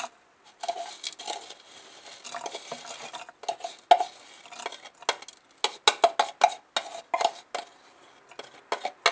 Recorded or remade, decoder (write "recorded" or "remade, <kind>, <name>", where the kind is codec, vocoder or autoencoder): recorded